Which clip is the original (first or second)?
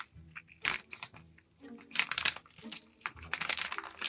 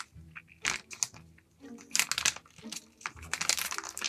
second